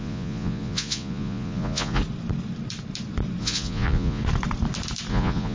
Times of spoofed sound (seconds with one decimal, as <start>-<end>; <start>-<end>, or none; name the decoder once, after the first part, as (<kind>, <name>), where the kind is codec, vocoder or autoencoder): 0.0-2.0 (vocoder, Vocos); 3.4-4.2; 5.1-5.5